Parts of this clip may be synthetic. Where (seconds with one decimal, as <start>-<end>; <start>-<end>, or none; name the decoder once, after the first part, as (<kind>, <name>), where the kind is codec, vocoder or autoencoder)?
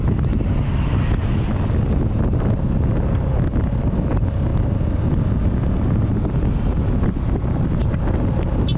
none